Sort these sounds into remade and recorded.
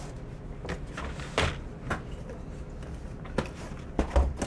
recorded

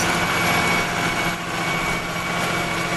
recorded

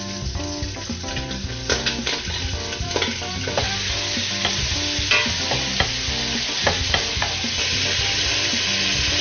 recorded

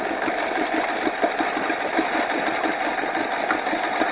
recorded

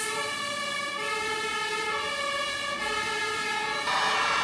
recorded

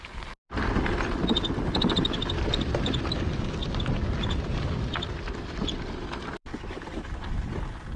recorded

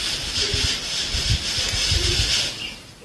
recorded